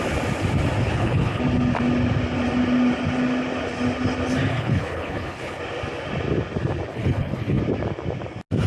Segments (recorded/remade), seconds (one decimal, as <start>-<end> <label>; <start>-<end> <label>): 0.0-0.8 recorded; 0.8-1.4 remade; 1.4-4.5 recorded; 4.5-5.6 remade; 5.6-6.9 recorded; 6.9-7.6 remade; 7.6-8.7 recorded